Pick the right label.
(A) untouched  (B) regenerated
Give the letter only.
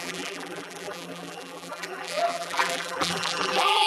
B